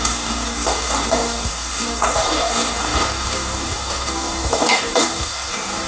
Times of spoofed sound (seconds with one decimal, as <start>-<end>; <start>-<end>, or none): 0.0-5.9